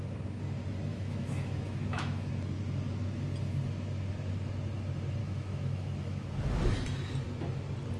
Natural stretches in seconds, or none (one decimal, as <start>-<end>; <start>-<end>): 0.0-0.9; 2.3-5.2; 6.3-8.0